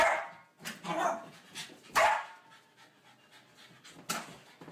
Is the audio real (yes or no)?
yes